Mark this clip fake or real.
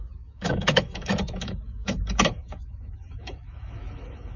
fake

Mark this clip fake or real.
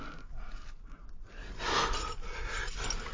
real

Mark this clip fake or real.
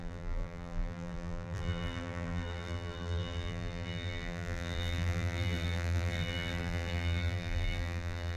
fake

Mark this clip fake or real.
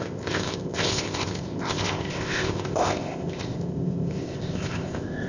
fake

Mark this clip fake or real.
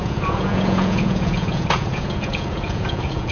fake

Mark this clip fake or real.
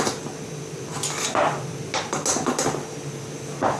real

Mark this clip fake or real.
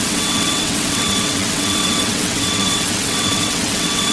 fake